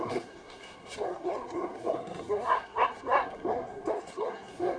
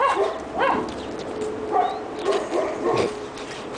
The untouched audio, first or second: second